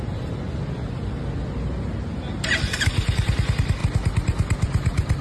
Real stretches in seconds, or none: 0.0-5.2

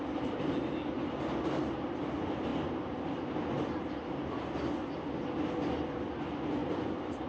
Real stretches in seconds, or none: 0.0-7.3

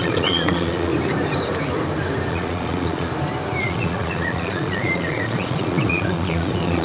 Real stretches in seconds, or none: 0.9-2.3; 3.1-3.6